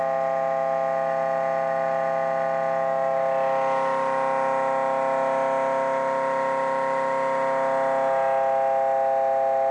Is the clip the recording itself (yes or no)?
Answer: yes